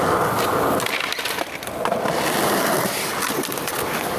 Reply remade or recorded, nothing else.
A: recorded